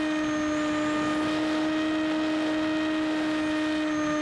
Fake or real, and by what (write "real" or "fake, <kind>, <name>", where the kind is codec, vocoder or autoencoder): real